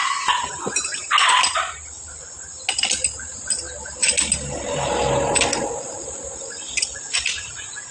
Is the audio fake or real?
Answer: real